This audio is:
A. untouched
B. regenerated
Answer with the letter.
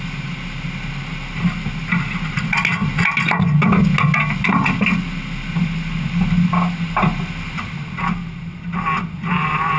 A